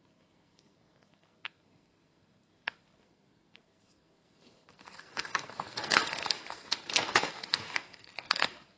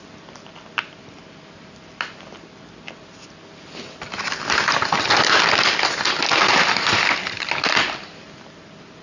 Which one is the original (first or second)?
second